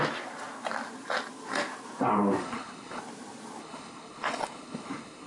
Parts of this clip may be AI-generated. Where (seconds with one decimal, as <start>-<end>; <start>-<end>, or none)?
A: 2.4-3.0; 3.6-5.3